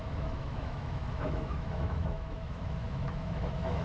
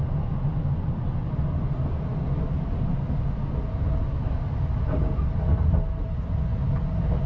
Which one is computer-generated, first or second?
first